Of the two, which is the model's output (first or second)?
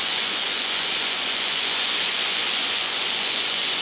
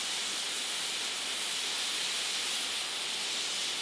first